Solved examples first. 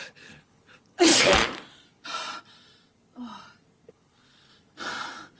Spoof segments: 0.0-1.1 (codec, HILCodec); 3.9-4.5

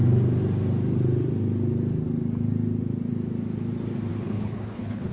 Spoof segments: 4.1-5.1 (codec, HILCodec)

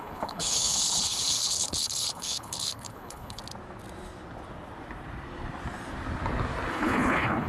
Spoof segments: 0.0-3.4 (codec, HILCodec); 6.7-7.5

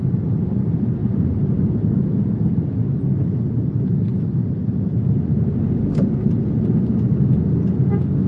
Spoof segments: none